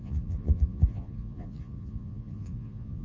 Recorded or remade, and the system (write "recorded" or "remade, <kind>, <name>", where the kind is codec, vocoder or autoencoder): remade, vocoder, Vocos